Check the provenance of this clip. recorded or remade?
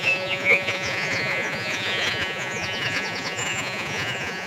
remade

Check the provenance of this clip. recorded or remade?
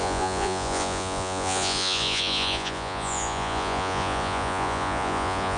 remade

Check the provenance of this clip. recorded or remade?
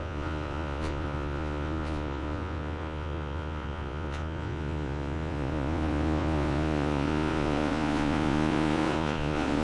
remade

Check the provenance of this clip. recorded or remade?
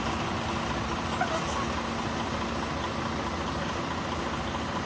recorded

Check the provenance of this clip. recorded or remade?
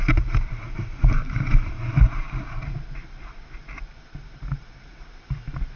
recorded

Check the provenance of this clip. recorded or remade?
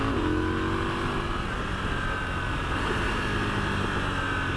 recorded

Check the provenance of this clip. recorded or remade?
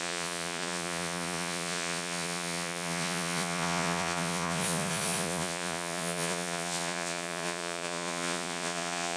remade